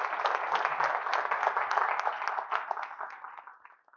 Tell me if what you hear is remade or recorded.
recorded